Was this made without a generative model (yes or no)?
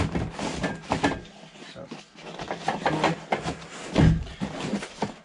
yes